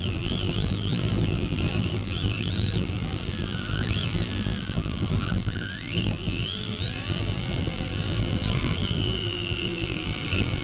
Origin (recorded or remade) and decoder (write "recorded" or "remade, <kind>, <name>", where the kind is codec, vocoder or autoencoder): remade, vocoder, BigVGAN v2